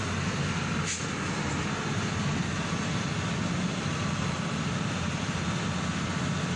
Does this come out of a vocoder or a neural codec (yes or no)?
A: no